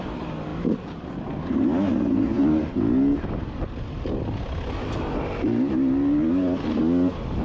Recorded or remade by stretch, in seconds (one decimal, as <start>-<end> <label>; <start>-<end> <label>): 0.0-7.4 recorded